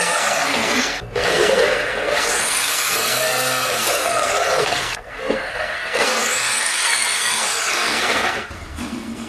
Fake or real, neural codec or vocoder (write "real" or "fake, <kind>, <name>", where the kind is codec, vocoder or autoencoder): fake, codec, SNAC